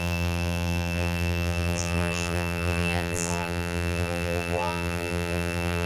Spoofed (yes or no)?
yes